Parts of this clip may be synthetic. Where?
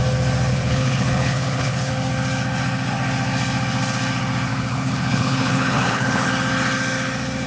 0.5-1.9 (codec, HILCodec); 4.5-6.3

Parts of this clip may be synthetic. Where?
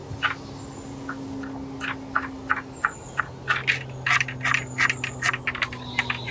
none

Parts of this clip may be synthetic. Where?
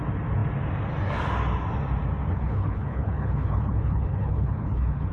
2.3-5.1 (codec, HILCodec)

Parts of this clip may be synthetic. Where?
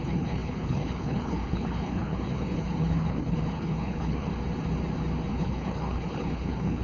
0.0-4.3 (codec, HILCodec); 5.3-6.8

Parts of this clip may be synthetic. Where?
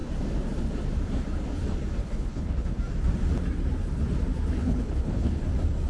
2.0-2.8 (codec, HILCodec); 4.6-5.4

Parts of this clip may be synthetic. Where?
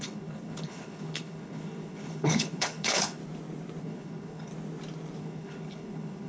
0.0-3.2 (codec, HILCodec); 3.8-4.5; 5.2-6.3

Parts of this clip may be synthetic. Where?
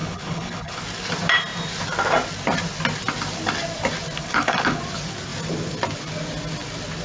0.0-0.8 (codec, HILCodec); 4.2-4.8